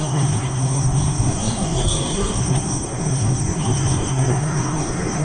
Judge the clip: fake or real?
fake